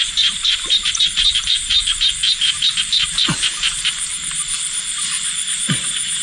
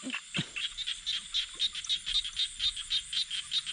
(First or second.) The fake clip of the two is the first